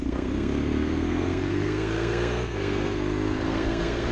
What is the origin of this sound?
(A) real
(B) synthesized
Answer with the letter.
B